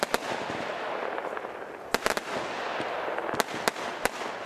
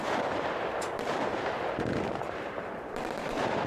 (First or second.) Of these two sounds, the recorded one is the first